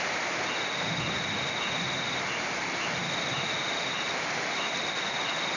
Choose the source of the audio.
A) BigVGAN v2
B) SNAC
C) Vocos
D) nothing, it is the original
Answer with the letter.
D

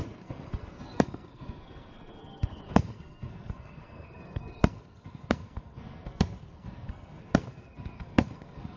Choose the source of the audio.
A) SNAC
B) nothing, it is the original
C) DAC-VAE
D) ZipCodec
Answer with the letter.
A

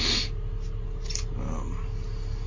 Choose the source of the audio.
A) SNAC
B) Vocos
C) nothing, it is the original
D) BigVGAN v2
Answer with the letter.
C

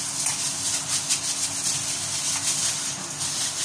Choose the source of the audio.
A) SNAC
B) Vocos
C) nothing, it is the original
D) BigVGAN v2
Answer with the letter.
C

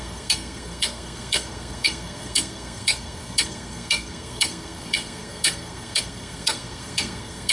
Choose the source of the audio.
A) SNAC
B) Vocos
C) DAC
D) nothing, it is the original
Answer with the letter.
A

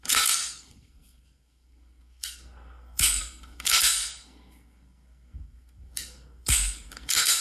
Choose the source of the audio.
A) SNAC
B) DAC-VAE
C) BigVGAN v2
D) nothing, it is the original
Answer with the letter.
A